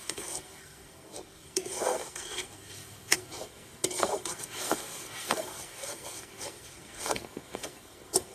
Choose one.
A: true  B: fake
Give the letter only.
B